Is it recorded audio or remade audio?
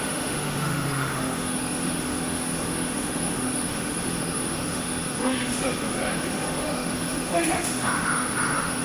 remade